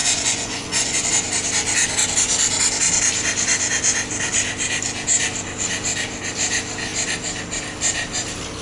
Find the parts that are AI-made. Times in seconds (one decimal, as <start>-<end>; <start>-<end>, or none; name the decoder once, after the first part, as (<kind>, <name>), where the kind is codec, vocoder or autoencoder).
0.0-1.1 (vocoder, Vocos)